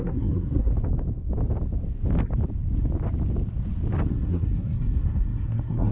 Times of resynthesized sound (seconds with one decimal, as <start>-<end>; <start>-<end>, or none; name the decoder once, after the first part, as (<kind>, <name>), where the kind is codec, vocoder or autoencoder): 0.0-0.7 (codec, SNAC); 4.1-5.9